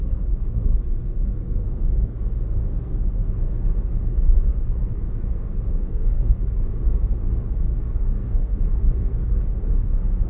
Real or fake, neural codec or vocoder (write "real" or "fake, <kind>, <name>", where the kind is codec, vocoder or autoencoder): fake, codec, SNAC